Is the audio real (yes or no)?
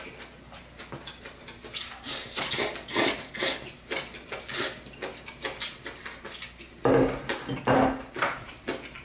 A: yes